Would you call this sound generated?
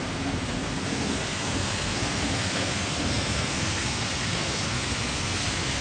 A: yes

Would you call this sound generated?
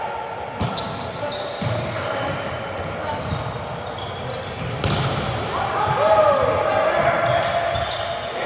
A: no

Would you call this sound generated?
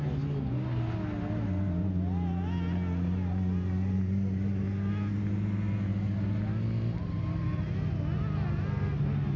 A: no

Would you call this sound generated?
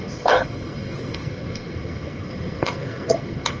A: yes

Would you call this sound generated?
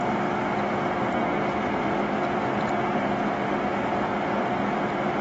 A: no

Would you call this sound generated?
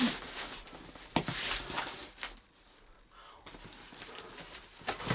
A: no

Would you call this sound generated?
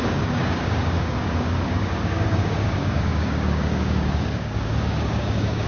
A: yes